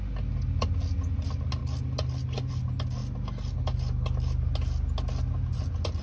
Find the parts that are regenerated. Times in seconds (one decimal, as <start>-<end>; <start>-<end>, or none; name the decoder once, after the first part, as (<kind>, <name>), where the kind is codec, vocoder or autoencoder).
none